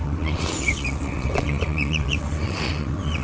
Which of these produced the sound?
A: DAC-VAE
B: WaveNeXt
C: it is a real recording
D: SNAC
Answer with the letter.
B